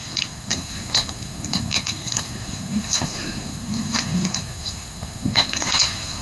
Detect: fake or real fake